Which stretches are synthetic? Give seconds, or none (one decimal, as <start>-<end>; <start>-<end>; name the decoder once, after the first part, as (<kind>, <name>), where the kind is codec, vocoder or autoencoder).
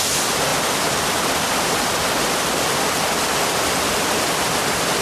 none